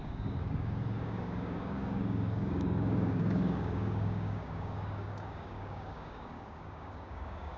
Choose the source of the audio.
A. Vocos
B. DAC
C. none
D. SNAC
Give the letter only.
B